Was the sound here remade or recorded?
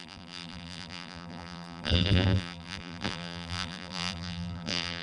remade